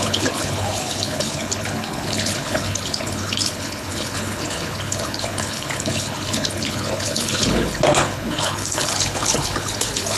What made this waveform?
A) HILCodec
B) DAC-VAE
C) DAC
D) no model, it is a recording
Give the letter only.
A